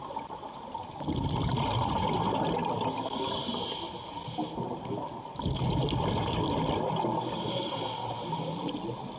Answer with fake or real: real